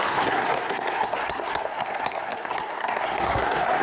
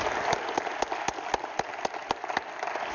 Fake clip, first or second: first